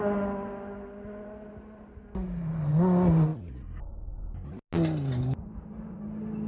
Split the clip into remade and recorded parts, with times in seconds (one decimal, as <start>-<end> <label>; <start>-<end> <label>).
0.0-6.5 recorded